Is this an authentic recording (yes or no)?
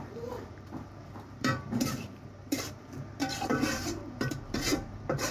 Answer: no